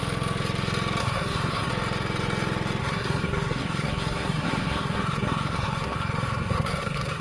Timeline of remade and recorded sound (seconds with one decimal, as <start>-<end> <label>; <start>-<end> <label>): 0.0-1.0 recorded; 1.0-1.7 remade; 1.7-2.8 recorded; 2.8-7.2 remade